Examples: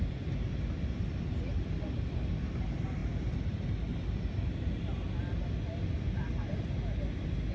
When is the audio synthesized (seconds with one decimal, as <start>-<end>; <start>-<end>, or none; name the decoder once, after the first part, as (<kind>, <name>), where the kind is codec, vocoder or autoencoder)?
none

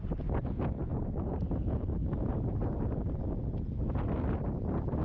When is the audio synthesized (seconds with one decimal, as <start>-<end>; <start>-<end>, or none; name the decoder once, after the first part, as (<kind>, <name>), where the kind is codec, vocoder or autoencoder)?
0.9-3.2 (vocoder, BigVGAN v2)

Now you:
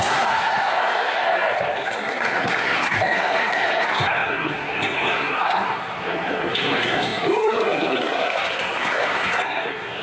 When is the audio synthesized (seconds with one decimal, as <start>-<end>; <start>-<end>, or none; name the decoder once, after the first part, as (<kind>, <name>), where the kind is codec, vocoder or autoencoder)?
0.0-10.0 (codec, SNAC)